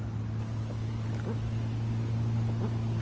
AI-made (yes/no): no